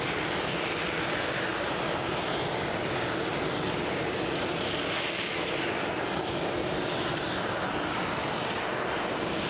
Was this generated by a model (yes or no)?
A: no